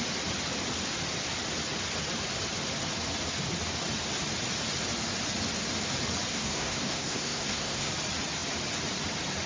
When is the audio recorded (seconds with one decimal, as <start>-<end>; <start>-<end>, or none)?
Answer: 0.0-6.3; 7.9-9.5